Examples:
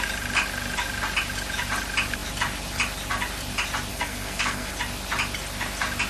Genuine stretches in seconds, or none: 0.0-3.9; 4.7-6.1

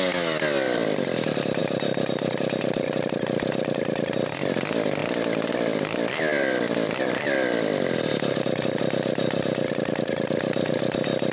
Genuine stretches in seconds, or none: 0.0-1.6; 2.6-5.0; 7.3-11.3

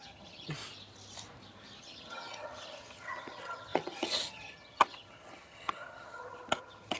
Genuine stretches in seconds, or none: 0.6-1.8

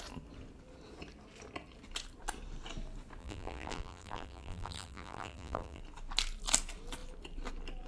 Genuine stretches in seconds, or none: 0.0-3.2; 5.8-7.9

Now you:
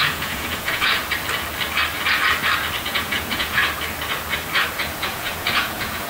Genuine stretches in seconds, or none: 1.0-2.8; 3.6-4.9

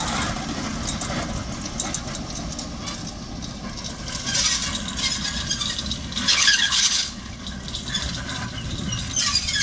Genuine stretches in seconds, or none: 0.0-6.3; 7.4-9.6

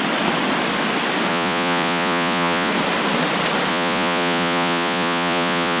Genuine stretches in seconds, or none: 0.0-1.3; 2.7-3.7